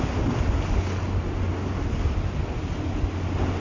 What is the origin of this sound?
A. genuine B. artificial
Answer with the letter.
A